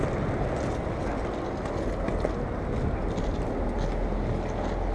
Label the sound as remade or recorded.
recorded